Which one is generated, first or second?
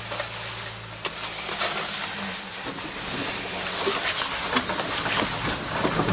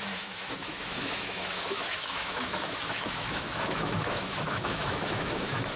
second